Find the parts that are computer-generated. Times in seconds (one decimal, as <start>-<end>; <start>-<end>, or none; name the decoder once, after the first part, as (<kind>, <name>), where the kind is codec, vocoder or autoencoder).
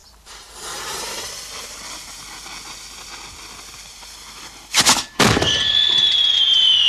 0.0-1.2 (vocoder, BigVGAN v2)